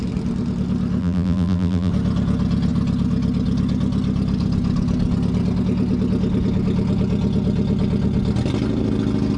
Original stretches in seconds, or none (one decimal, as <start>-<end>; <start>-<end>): 0.0-1.0; 1.9-9.4